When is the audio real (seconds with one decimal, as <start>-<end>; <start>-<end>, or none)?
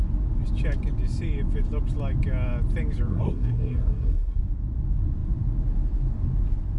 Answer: 0.0-3.1; 4.4-6.8